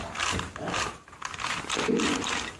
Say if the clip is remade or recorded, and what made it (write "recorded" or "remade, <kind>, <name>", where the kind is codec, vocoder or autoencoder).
recorded